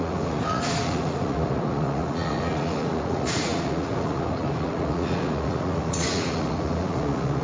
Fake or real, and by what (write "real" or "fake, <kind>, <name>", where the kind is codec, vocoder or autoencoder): fake, vocoder, Vocos